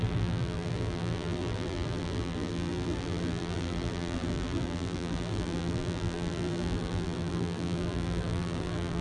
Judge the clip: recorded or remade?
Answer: remade